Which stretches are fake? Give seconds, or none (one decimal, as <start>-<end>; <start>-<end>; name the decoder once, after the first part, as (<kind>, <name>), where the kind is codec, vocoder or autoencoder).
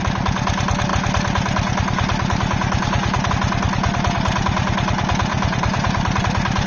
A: 5.3-6.2 (vocoder, BigVGAN v2)